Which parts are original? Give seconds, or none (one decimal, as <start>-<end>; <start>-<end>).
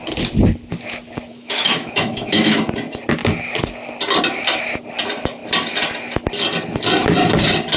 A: 0.0-1.3; 2.7-7.8